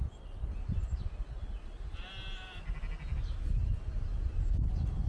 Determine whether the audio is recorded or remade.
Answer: recorded